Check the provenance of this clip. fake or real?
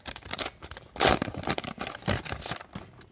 real